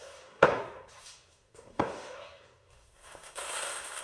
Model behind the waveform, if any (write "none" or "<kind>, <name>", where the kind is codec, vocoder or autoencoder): codec, SNAC